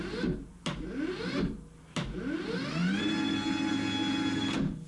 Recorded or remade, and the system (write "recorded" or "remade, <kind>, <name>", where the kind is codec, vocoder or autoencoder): recorded